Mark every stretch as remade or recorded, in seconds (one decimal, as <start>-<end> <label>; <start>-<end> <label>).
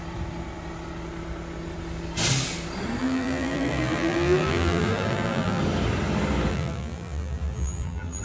0.0-3.0 recorded; 3.0-5.6 remade; 5.6-6.5 recorded; 6.5-8.2 remade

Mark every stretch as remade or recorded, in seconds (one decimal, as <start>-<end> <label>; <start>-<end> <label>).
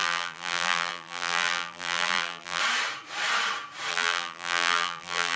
0.0-2.6 remade; 2.6-3.9 recorded; 3.9-5.4 remade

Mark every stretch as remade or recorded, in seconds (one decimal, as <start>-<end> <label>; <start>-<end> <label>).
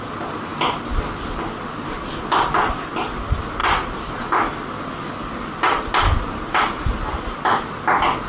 0.0-6.3 recorded; 6.3-7.8 remade; 7.8-8.3 recorded